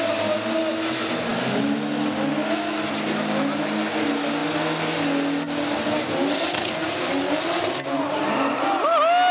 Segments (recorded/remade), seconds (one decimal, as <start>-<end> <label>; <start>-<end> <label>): 0.0-9.3 recorded